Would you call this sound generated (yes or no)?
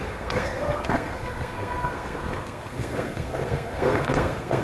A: yes